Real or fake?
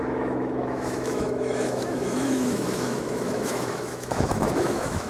fake